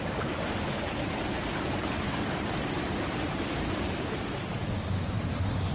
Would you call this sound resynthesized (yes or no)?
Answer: no